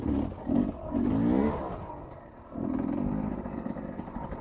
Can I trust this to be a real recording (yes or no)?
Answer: yes